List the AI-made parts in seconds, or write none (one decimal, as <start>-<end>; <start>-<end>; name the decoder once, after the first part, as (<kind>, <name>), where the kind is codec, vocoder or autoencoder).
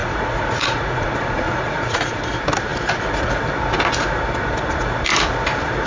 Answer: 0.0-2.2 (vocoder, Vocos)